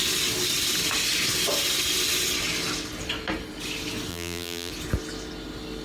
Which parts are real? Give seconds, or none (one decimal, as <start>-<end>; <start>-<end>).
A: 0.0-4.1; 4.7-5.8